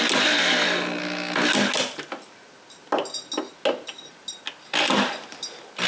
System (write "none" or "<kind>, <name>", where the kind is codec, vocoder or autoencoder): none